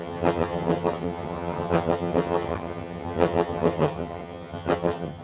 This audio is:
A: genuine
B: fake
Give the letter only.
B